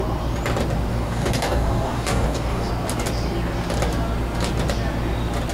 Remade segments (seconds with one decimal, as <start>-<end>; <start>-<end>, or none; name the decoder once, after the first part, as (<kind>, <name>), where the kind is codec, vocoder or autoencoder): 0.9-2.7 (codec, DAC)